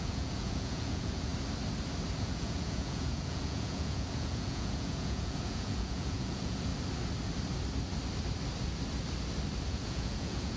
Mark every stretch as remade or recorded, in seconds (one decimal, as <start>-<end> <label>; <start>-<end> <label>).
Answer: 0.0-1.3 remade; 1.3-2.2 recorded; 2.2-6.7 remade; 6.7-9.7 recorded; 9.7-10.6 remade